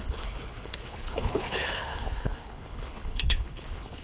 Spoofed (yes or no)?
yes